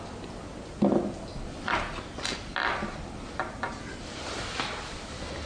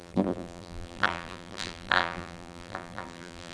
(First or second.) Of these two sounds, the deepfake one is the second